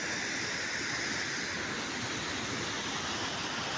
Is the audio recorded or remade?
recorded